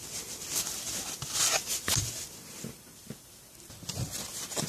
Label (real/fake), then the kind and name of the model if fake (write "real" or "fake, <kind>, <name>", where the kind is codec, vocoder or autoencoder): real